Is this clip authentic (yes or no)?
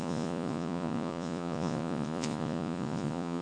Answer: no